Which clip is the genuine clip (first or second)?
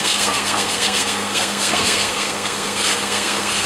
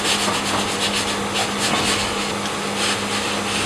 second